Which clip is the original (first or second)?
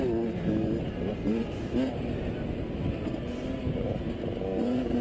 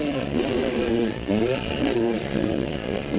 first